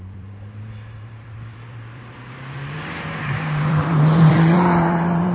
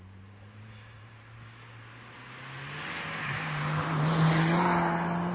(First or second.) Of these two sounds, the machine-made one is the first